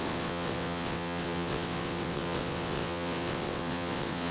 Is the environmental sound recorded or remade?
remade